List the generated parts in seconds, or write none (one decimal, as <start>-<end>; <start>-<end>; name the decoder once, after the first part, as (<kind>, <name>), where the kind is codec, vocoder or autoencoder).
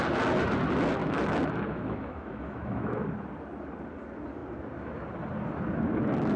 1.0-3.0 (autoencoder, DAC-VAE)